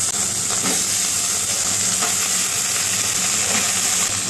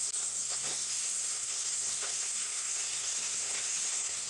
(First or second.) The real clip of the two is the first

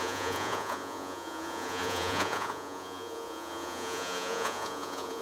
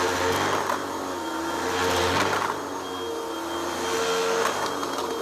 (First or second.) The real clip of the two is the second